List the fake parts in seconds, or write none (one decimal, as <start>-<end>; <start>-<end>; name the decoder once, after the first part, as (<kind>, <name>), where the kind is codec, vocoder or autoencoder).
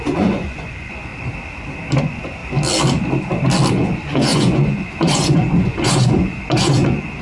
0.0-1.1 (vocoder, Vocos); 2.0-2.4; 3.7-7.2